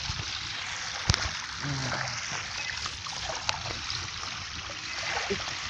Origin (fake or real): real